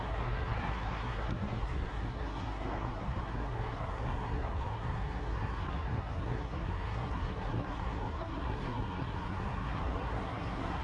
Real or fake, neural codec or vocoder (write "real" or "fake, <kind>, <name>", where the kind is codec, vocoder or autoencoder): fake, codec, SNAC